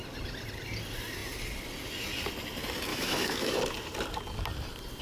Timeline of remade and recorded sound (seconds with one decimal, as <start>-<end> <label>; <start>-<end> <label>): 0.0-2.9 recorded; 2.9-3.6 remade; 3.6-5.0 recorded